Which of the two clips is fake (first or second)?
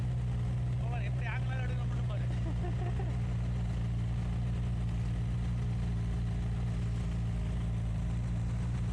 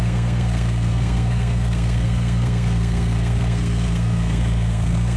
second